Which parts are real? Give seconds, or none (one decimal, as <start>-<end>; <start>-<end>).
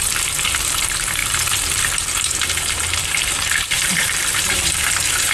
none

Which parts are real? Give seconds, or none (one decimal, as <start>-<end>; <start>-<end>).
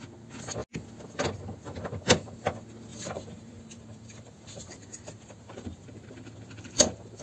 0.0-2.9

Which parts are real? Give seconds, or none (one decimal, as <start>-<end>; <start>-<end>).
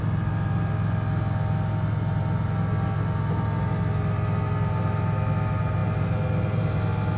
0.0-7.2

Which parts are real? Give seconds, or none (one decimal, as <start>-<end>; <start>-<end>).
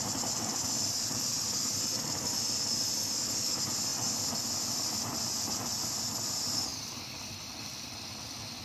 6.7-7.2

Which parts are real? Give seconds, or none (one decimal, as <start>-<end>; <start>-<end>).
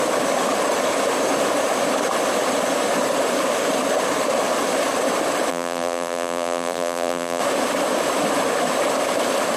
0.0-5.5; 7.4-9.6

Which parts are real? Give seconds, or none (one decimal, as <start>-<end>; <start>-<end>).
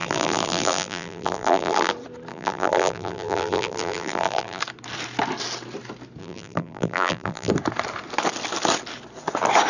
1.9-2.3; 4.6-6.2; 7.5-9.7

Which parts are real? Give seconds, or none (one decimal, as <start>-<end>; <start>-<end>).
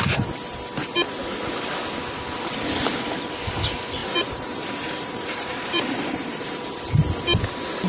0.0-4.0; 6.9-7.9